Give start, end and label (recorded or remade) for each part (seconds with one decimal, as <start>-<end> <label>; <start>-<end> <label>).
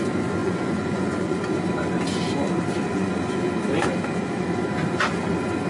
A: 0.0-0.4 recorded; 0.4-1.4 remade; 1.4-2.9 recorded; 2.9-3.4 remade; 3.4-5.7 recorded